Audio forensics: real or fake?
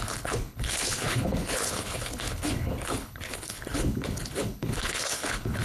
fake